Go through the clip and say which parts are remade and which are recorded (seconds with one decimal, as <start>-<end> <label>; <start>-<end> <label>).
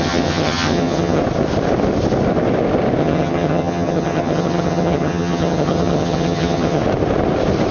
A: 0.0-1.2 remade; 1.2-3.0 recorded; 3.0-6.8 remade; 6.8-7.7 recorded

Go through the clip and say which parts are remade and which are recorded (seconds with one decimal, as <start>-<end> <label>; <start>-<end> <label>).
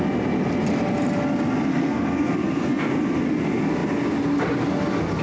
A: 0.0-1.7 recorded; 1.7-2.8 remade; 2.8-5.2 recorded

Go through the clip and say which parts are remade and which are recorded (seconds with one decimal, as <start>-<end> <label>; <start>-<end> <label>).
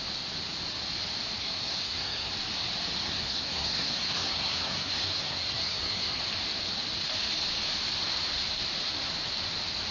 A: 0.0-1.4 recorded; 1.4-2.3 remade; 2.3-3.0 recorded; 3.0-6.2 remade; 6.2-9.9 recorded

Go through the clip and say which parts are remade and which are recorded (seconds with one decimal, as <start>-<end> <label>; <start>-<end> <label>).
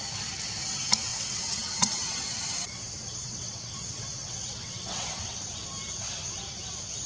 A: 0.0-1.1 recorded; 1.1-5.4 remade; 5.4-7.1 recorded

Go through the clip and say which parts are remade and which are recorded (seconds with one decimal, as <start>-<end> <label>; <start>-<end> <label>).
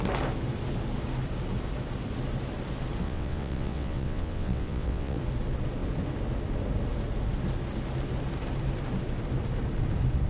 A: 0.0-3.0 recorded; 3.0-5.2 remade; 5.2-10.3 recorded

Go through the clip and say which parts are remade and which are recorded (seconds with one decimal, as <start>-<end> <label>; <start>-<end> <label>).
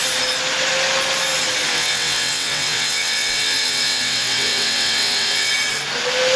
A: 0.0-1.7 recorded; 1.7-5.5 remade; 5.5-6.4 recorded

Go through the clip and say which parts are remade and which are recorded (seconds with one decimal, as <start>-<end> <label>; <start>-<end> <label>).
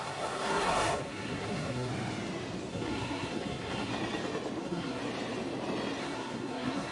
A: 0.0-1.9 remade; 1.9-2.7 recorded; 2.7-3.9 remade; 3.9-4.6 recorded; 4.6-5.0 remade; 5.0-6.0 recorded; 6.0-6.9 remade